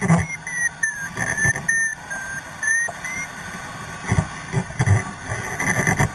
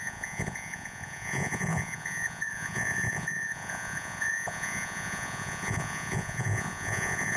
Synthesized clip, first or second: second